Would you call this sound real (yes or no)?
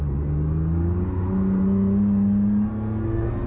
yes